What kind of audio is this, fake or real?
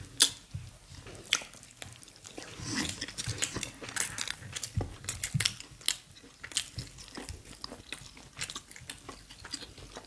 real